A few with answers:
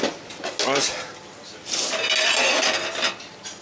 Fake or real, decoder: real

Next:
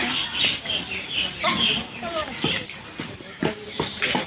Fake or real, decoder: real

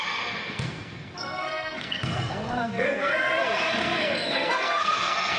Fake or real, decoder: fake, codec, SNAC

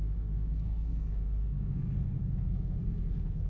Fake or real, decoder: fake, codec, SNAC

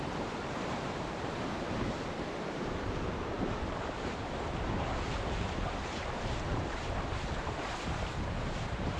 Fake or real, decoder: fake, vocoder, BigVGAN v2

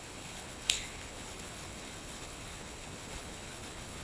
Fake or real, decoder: fake, codec, HILCodec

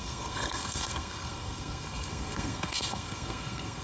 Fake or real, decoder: fake, codec, SNAC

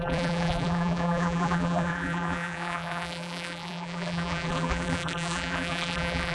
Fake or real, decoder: fake, vocoder, BigVGAN v2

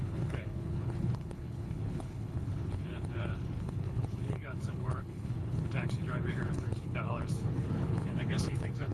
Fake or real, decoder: fake, codec, HILCodec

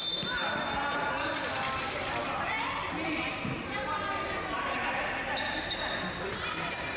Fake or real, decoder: real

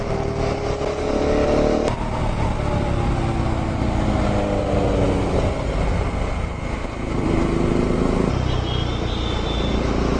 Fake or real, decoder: real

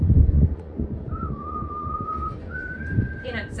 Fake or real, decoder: fake, vocoder, Vocos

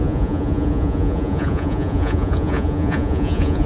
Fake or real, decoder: fake, vocoder, Vocos